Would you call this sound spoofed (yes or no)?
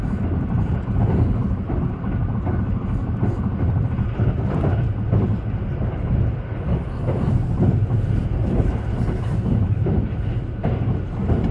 no